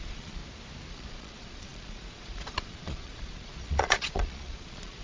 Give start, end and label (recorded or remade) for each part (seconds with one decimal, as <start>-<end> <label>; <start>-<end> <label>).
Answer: 0.0-0.4 remade; 0.4-0.9 recorded; 0.9-5.0 remade